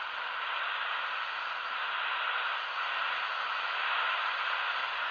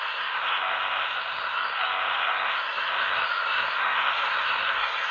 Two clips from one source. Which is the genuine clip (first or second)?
first